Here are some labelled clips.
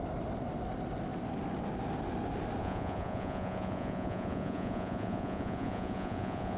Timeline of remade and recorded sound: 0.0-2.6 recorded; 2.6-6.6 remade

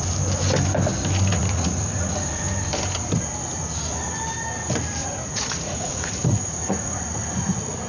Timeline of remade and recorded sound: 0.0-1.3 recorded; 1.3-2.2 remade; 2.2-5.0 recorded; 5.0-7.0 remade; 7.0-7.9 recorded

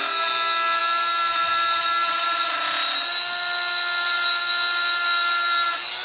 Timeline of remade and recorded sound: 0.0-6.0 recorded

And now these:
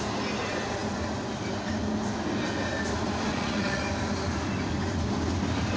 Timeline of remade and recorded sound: 0.0-3.3 recorded; 3.3-3.8 remade; 3.8-5.8 recorded

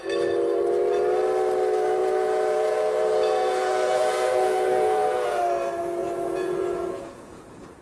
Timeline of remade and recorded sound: 0.0-2.0 recorded; 2.0-5.4 remade; 5.4-6.0 recorded; 6.0-7.8 remade

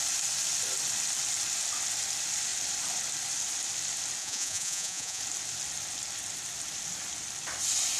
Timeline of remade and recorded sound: 0.0-4.2 recorded; 4.2-5.2 remade; 5.2-8.0 recorded